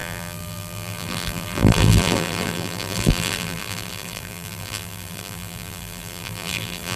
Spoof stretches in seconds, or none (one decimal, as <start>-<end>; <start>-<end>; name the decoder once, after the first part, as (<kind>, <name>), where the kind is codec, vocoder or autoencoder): 0.0-7.0 (vocoder, BigVGAN v2)